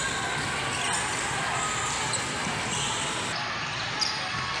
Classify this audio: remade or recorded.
recorded